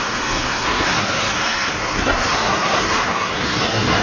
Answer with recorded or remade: remade